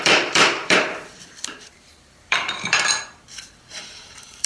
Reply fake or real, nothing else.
fake